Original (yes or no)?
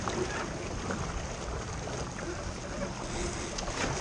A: yes